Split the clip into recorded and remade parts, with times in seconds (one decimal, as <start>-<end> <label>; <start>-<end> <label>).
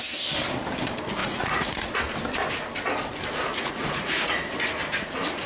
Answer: 0.0-1.2 recorded; 1.2-1.9 remade; 1.9-3.5 recorded; 3.5-4.2 remade; 4.2-5.5 recorded